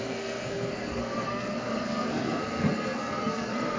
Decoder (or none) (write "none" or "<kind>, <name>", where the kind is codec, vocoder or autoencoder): codec, SNAC